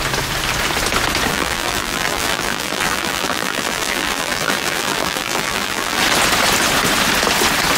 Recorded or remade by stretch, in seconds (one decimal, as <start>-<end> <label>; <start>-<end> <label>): 0.0-1.3 recorded; 1.3-6.0 remade; 6.0-7.8 recorded